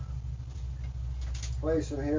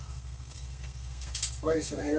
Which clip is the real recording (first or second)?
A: first